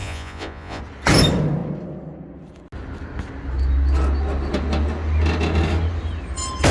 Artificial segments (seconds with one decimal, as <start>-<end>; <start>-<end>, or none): 0.0-0.8